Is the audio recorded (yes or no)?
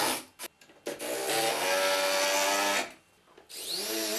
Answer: yes